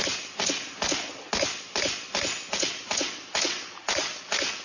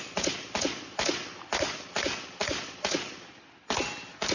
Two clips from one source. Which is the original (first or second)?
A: first